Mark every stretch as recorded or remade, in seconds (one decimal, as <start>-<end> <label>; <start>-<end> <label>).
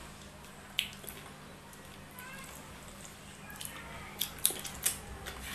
0.0-5.5 recorded